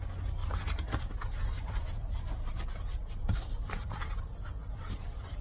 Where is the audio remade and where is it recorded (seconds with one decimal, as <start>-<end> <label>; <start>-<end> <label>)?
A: 0.0-5.4 recorded